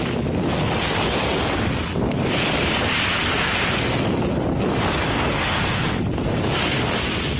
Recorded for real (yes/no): yes